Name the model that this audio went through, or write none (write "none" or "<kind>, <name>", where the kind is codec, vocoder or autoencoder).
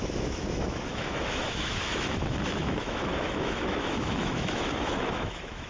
autoencoder, DAC-VAE